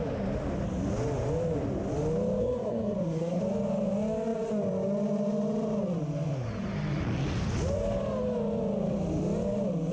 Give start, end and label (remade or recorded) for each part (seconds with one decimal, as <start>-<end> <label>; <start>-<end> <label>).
0.0-2.4 recorded; 2.4-3.4 remade; 3.4-9.9 recorded